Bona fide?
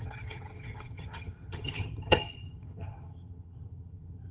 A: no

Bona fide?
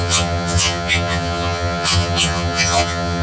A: no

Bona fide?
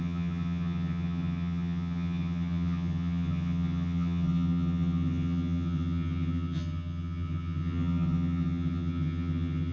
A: no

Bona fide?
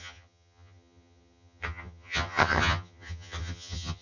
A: no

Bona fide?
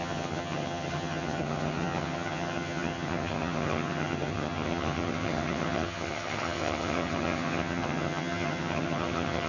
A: no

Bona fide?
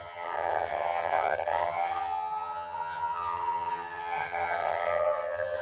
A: no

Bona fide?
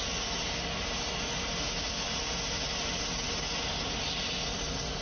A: yes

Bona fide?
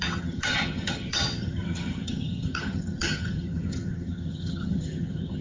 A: no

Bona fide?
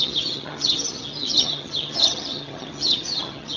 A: no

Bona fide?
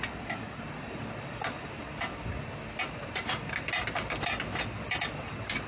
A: yes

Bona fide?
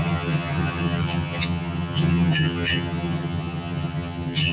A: no